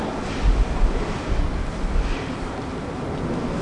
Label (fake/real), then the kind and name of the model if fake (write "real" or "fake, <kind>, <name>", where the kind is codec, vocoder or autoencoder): real